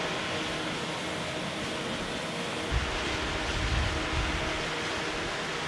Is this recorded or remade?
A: recorded